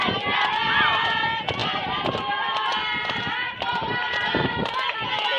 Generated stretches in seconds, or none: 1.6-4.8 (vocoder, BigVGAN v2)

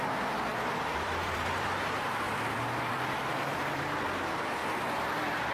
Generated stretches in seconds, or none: 0.5-3.8 (vocoder, BigVGAN v2); 4.6-5.5

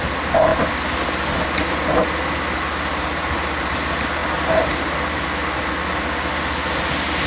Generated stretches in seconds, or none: none

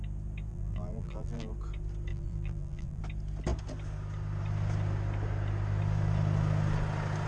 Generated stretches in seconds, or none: 0.5-1.5 (vocoder, BigVGAN v2); 2.1-3.0